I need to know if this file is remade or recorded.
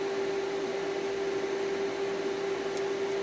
recorded